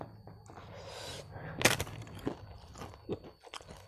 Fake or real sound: real